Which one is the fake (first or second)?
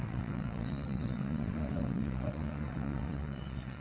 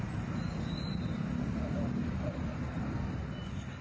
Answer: first